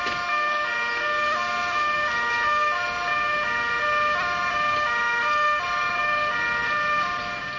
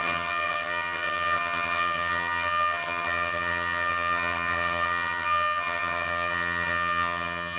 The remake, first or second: second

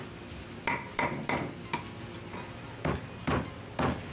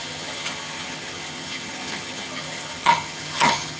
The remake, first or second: second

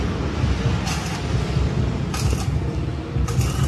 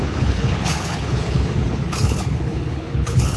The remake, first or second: second